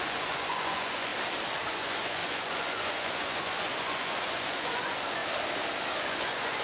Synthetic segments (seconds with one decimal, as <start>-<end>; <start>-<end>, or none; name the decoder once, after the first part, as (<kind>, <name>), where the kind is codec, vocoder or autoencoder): 0.0-1.1 (vocoder, Vocos); 1.7-5.2; 6.0-6.6